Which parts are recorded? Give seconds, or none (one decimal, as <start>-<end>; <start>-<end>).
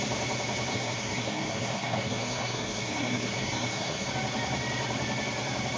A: 0.0-0.7; 4.1-5.8